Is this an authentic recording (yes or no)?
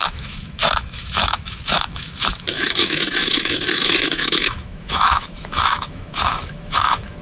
no